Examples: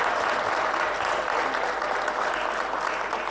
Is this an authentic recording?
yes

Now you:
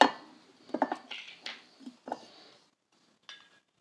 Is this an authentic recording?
yes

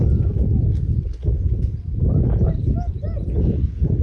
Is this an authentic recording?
yes